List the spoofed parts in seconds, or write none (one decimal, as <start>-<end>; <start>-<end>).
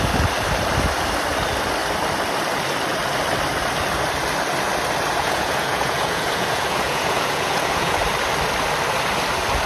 5.2-8.0